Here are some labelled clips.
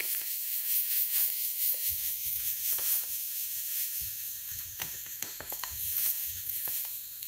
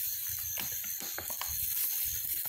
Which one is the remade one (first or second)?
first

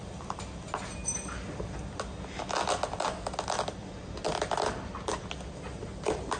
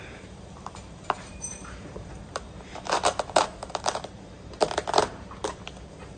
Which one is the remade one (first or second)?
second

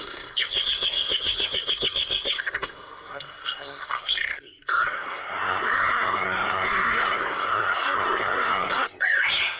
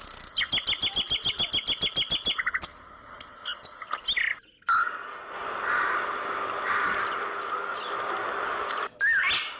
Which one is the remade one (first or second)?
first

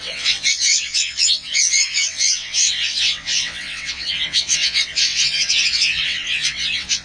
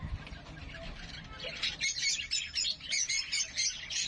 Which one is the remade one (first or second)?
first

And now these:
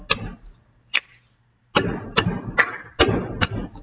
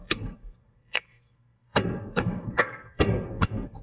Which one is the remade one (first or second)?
second